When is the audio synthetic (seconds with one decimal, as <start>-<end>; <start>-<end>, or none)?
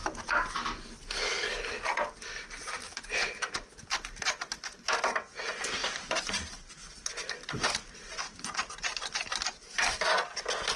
none